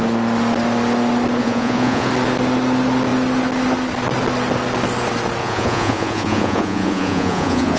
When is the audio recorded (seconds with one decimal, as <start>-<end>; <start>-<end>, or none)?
0.0-1.4; 2.1-5.4